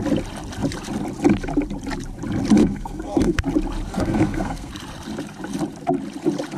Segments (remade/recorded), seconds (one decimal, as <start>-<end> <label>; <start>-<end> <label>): 0.0-2.6 recorded; 2.6-3.4 remade; 3.4-3.9 recorded; 3.9-4.7 remade; 4.7-6.6 recorded

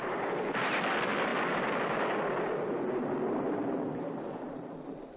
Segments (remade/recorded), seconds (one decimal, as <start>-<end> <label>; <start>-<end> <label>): 0.0-5.2 recorded

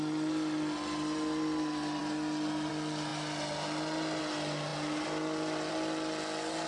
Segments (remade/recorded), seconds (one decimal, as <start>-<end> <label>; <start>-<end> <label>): 0.0-6.7 recorded

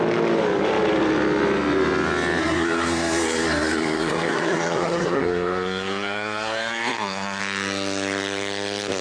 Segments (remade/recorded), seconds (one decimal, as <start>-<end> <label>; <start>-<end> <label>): 0.0-2.4 recorded; 2.4-7.4 remade; 7.4-9.0 recorded